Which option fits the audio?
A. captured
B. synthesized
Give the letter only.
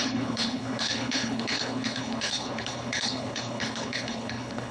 B